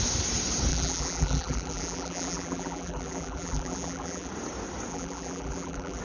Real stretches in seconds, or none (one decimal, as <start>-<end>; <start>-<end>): 0.0-0.7; 4.3-4.9